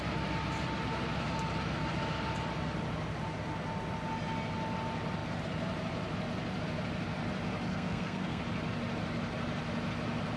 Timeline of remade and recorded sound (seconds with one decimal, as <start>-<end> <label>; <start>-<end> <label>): 0.0-7.7 recorded; 7.7-8.4 remade; 8.4-10.4 recorded